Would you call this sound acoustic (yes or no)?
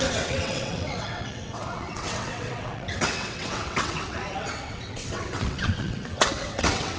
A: no